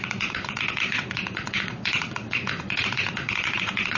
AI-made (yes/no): yes